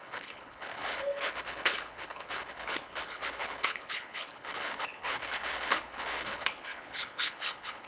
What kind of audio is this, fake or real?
fake